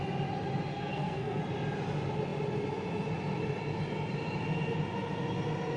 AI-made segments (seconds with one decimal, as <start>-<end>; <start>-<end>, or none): 0.7-1.4